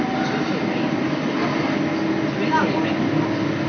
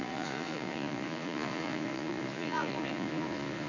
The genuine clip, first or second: first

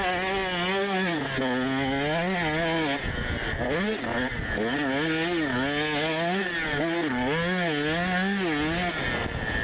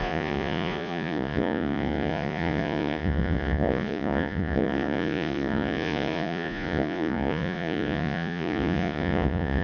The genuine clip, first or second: first